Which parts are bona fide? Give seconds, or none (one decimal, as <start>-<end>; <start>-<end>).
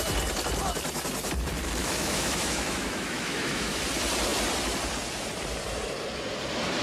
0.0-1.8; 3.8-6.8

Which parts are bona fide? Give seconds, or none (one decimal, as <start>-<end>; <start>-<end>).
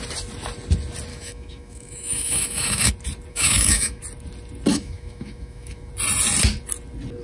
0.0-1.1; 2.9-3.3; 4.0-4.7; 5.9-7.2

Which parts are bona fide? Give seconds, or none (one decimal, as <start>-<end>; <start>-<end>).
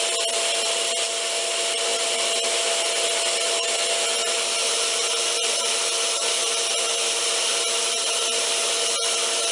0.0-9.5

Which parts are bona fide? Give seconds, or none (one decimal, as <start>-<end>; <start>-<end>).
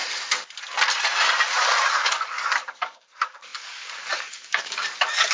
0.0-1.9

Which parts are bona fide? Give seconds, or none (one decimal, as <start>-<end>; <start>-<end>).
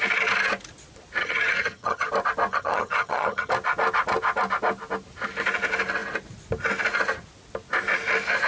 0.0-1.2; 2.1-2.5; 3.5-8.5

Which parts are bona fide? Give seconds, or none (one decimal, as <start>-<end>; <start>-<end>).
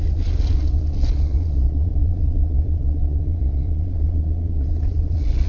none